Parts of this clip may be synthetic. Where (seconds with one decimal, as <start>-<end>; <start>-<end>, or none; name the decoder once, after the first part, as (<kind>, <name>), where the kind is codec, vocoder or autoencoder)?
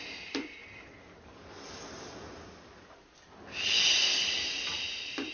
none